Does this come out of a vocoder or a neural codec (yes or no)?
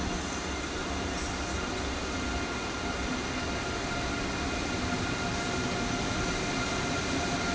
no